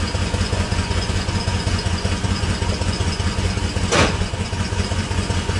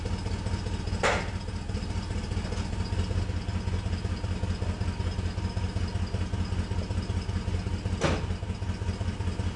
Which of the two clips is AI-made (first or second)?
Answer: first